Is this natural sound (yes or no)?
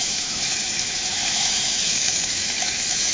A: no